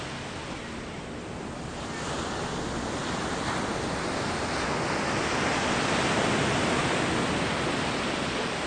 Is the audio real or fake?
real